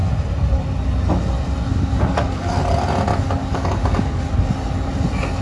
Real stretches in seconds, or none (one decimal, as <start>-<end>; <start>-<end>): 0.0-1.7; 2.5-3.1; 4.3-5.4

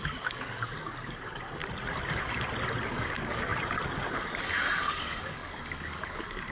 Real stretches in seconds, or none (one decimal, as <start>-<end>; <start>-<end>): 1.6-2.9; 3.5-4.8

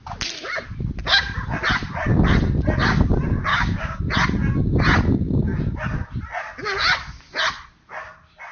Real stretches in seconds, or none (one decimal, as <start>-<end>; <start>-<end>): 0.0-3.5; 4.0-8.5

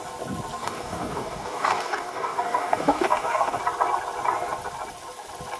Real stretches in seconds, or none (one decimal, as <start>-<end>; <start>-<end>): 0.0-0.6; 3.6-5.6

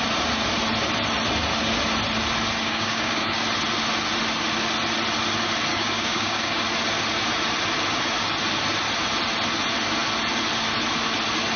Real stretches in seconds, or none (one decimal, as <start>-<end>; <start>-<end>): 0.0-2.6; 3.4-5.7; 6.6-11.6

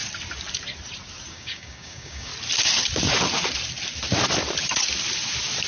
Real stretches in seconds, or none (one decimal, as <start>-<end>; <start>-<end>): 0.0-1.3; 2.3-5.7

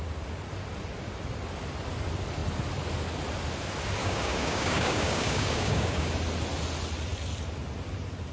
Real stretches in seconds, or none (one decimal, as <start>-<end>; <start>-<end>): 0.0-4.0; 6.1-8.3

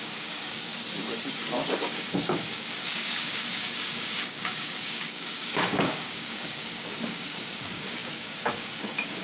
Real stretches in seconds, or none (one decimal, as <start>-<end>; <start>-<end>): 0.7-1.8